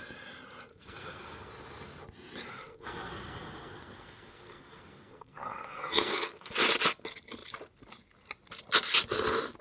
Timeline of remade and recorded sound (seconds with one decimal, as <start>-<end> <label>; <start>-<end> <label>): 0.0-0.7 recorded; 0.7-1.5 remade; 1.5-2.5 recorded; 2.5-6.5 remade; 6.5-9.6 recorded